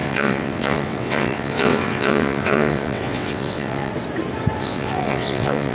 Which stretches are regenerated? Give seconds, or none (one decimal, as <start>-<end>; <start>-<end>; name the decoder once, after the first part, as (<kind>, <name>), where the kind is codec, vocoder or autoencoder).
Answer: 0.0-3.9 (vocoder, WaveNeXt); 4.6-5.7

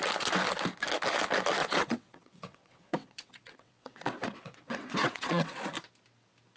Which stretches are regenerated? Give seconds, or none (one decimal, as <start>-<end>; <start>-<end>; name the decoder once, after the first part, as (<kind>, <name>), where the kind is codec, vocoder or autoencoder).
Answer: 1.6-5.6 (vocoder, WaveNeXt)

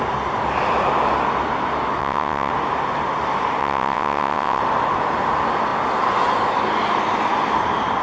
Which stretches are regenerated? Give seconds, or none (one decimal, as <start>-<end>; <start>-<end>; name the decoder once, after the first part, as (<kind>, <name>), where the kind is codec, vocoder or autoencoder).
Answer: 2.0-2.5 (vocoder, WaveNeXt); 3.6-4.6

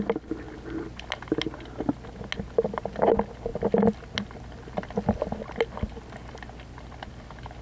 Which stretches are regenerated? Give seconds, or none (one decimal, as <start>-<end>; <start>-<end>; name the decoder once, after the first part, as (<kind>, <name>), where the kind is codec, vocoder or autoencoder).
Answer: none

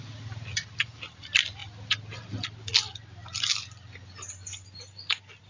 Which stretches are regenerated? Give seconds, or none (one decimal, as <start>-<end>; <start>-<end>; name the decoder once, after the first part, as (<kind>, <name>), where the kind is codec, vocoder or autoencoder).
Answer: none

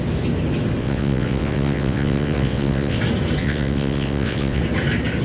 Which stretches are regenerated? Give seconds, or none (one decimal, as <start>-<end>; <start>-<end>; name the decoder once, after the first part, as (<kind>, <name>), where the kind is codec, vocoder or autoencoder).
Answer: 0.8-3.0 (vocoder, WaveNeXt); 3.4-4.6

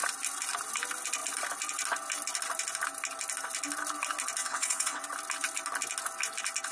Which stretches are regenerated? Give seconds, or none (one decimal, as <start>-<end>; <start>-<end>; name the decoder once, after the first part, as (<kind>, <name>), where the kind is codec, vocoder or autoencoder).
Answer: 4.4-5.0 (vocoder, WaveNeXt)

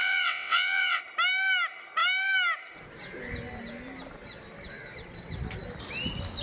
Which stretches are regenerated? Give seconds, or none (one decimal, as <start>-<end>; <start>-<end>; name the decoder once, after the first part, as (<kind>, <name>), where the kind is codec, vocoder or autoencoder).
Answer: 0.0-1.0 (vocoder, WaveNeXt)